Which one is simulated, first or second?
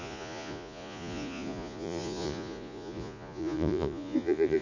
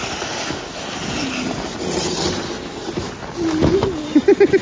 first